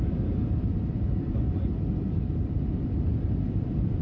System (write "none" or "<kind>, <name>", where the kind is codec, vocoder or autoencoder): vocoder, BigVGAN v2